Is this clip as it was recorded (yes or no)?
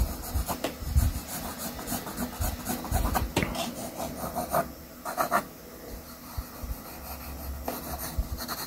yes